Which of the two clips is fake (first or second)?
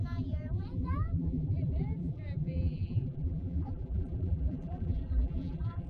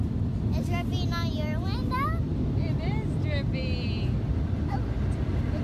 first